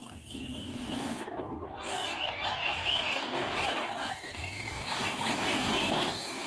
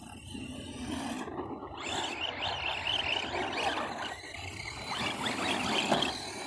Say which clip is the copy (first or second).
first